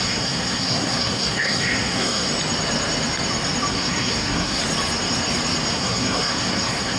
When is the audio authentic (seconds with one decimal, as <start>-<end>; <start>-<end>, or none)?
2.3-3.7; 4.6-5.7